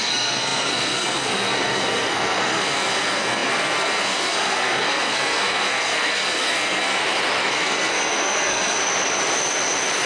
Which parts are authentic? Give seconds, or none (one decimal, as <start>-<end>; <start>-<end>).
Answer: 7.0-7.5; 8.8-10.1